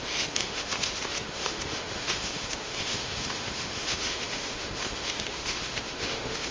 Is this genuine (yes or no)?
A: no